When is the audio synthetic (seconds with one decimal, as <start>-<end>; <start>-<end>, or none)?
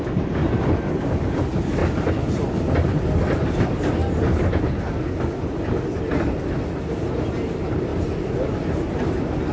1.8-2.9